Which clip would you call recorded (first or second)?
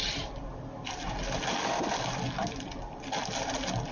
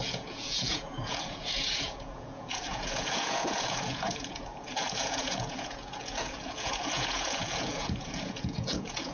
first